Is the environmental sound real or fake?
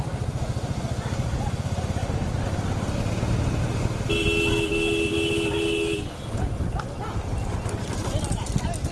real